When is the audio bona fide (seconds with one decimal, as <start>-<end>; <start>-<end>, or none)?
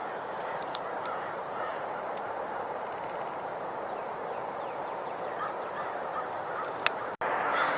none